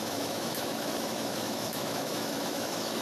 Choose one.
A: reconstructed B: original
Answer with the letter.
A